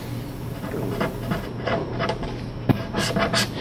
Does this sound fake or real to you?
real